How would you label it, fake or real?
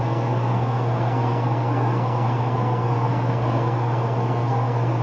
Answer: fake